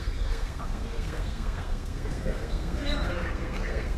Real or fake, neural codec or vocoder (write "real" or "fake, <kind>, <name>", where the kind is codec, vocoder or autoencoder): fake, codec, SNAC